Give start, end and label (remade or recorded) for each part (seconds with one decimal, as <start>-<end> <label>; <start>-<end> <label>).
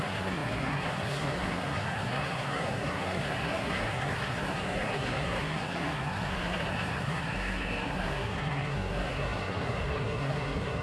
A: 0.0-10.8 remade